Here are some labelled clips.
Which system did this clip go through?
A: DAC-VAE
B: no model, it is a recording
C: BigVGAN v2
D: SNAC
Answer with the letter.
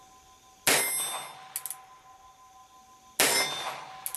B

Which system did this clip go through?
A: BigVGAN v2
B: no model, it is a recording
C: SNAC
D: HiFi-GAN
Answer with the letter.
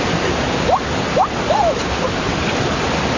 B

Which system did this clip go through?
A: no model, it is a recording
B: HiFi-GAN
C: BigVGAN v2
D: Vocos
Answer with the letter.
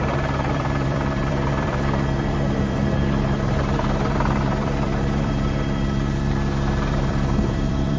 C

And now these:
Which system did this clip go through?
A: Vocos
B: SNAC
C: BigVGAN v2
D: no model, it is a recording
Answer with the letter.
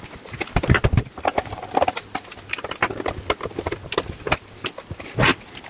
C